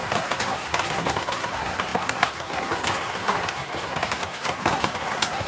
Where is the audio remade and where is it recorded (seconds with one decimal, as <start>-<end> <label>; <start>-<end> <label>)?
0.0-5.5 remade